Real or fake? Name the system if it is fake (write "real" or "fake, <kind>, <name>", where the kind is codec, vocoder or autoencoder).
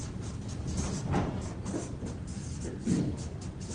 fake, vocoder, BigVGAN v2